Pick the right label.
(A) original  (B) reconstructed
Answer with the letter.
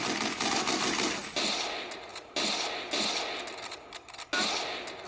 A